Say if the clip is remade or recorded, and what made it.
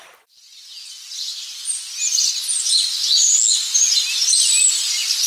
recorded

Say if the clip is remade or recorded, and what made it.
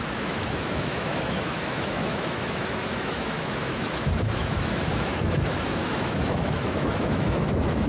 remade, autoencoder, DAC-VAE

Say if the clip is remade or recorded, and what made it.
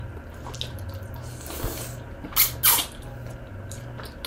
recorded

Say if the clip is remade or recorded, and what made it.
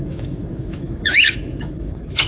remade, autoencoder, DAC-VAE